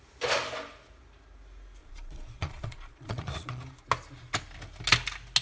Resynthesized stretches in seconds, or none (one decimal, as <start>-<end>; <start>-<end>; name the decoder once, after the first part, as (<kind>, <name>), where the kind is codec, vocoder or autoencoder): 1.8-3.6 (vocoder, Vocos)